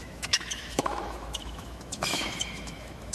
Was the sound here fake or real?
fake